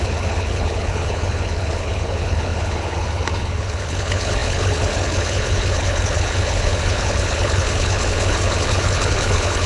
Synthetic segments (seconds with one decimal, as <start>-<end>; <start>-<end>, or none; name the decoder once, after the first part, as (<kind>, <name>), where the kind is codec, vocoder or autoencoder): 0.0-9.7 (codec, HILCodec)